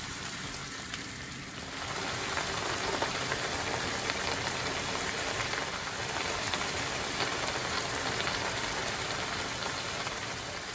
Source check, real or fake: fake